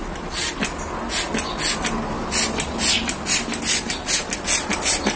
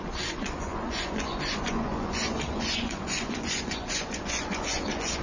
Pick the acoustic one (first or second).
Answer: first